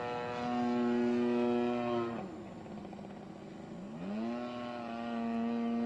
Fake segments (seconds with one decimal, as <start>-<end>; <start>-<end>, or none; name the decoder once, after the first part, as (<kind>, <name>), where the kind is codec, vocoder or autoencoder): 2.8-3.3 (vocoder, BigVGAN v2)